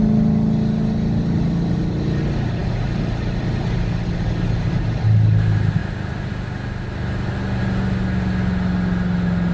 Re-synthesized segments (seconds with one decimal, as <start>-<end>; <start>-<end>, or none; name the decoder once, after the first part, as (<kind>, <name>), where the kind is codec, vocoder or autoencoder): none